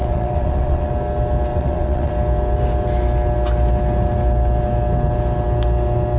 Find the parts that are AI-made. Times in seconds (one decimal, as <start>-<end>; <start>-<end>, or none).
0.0-0.9; 1.5-2.1